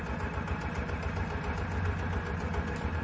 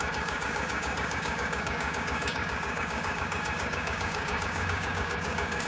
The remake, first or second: second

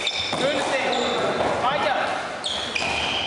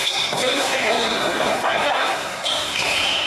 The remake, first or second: second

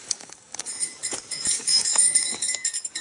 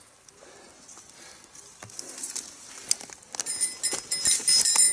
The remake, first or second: first